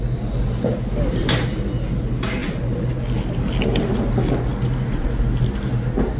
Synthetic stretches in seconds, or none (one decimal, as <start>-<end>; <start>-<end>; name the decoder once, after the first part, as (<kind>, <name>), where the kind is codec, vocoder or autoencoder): none